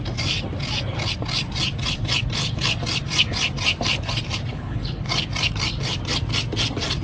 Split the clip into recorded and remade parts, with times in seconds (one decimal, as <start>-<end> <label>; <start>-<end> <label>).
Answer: 0.0-4.5 recorded; 4.5-5.1 remade; 5.1-7.0 recorded

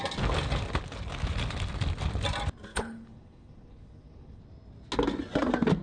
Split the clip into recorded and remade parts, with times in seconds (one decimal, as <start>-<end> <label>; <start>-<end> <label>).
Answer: 0.0-2.7 recorded; 2.7-4.4 remade; 4.4-5.8 recorded

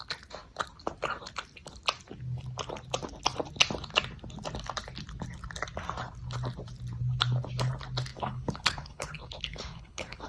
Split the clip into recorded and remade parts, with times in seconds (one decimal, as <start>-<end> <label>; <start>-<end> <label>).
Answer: 0.0-8.1 recorded; 8.1-10.3 remade

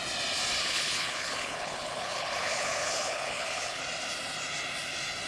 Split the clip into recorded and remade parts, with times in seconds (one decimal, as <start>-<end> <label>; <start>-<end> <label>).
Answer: 0.0-0.6 recorded; 0.6-3.8 remade; 3.8-5.3 recorded